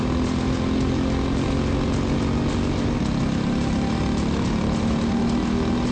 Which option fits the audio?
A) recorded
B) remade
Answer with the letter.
A